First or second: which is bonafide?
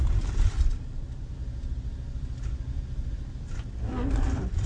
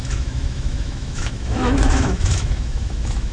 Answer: first